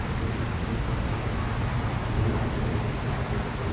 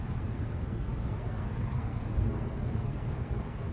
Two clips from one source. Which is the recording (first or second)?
first